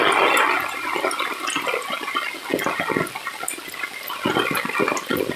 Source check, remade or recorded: recorded